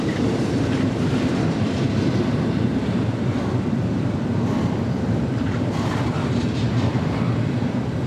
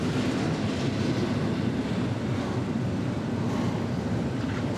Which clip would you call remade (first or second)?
first